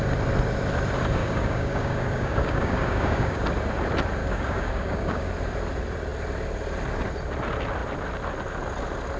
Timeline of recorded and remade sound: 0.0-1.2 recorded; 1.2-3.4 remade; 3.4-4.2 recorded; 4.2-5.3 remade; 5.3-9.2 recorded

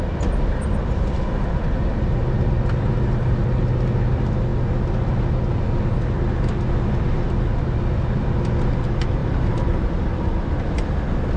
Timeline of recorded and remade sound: 0.0-9.2 recorded; 9.2-10.3 remade; 10.3-11.4 recorded

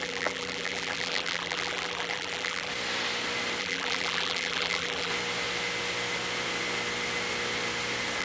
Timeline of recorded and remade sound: 0.0-2.7 remade; 2.7-3.6 recorded; 3.6-5.1 remade; 5.1-8.2 recorded

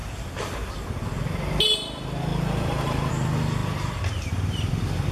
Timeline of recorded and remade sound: 0.0-2.3 recorded; 2.3-3.1 remade; 3.1-5.1 recorded

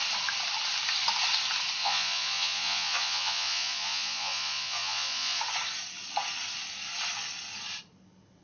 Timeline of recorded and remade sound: 0.0-1.8 recorded; 1.8-5.4 remade; 5.4-8.4 recorded

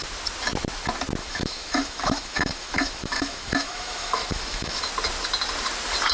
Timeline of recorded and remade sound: 0.0-1.2 recorded; 1.2-4.9 remade; 4.9-6.1 recorded

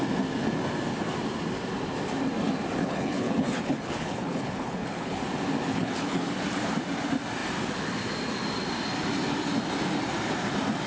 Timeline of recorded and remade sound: 0.0-2.8 recorded; 2.8-5.2 remade; 5.2-5.7 recorded; 5.7-6.3 remade; 6.3-10.9 recorded